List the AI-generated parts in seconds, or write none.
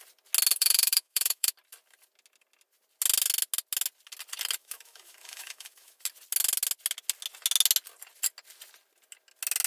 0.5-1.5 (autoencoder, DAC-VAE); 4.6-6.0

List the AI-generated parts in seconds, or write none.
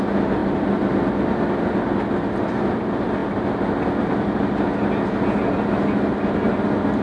none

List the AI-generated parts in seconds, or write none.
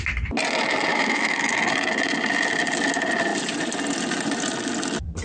0.9-1.5 (autoencoder, DAC-VAE)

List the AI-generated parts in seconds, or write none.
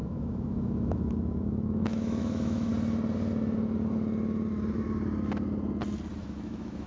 0.0-2.7 (autoencoder, DAC-VAE); 6.2-6.9